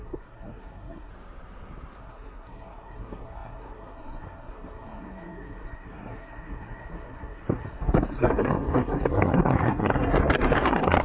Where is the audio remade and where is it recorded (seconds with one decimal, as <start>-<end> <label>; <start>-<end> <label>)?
0.0-1.1 remade; 1.1-2.0 recorded; 2.0-11.0 remade